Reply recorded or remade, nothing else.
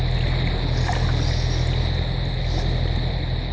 recorded